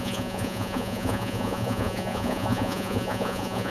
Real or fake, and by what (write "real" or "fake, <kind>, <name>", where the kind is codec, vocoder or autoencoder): fake, vocoder, Vocos